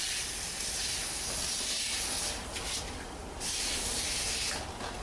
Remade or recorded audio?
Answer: recorded